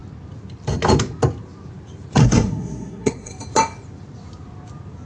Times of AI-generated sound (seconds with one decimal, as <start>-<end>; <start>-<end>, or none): 2.2-3.3